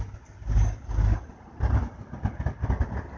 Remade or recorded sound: recorded